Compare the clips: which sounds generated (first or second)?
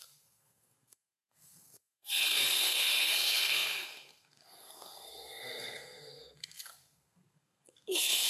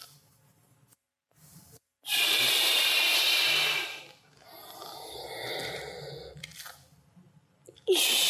first